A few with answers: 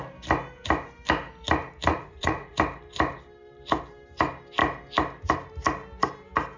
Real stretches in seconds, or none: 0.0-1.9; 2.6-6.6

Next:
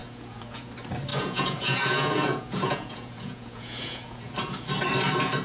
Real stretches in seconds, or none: 0.7-1.1; 4.3-5.4

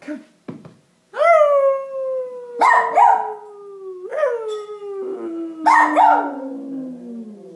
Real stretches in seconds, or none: 0.0-7.6

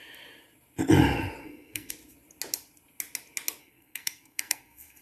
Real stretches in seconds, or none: 0.0-1.4; 1.9-3.6

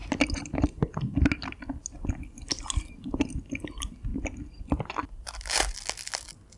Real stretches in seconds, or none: 0.0-6.6

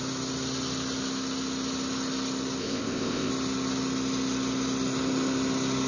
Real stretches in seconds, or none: 0.0-2.6; 3.3-5.9